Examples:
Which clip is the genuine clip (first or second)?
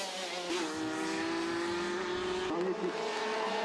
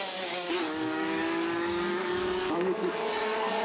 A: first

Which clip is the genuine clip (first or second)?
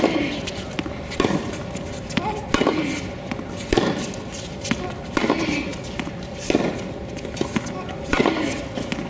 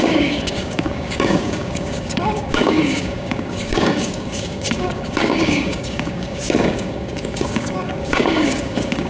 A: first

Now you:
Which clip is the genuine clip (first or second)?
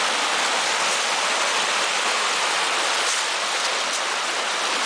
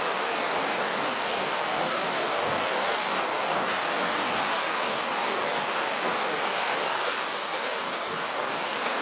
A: first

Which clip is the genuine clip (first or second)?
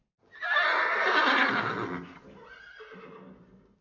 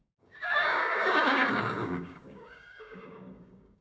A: first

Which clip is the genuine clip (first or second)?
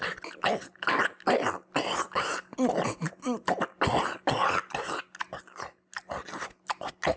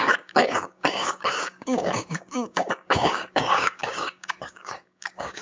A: first